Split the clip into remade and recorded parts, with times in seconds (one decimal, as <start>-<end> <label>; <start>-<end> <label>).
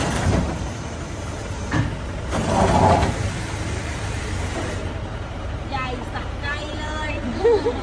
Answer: 0.0-6.5 remade; 6.5-7.1 recorded; 7.1-7.8 remade